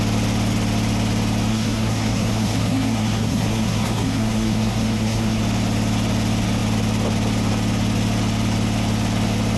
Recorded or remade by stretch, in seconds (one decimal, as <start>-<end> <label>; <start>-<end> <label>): 0.0-1.5 recorded; 1.5-5.4 remade; 5.4-9.6 recorded